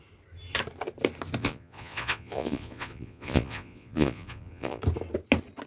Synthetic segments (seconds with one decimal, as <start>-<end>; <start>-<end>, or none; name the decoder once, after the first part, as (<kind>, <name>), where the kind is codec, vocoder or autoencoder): 1.4-4.8 (vocoder, Vocos)